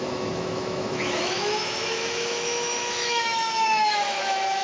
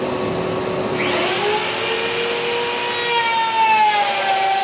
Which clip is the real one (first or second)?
second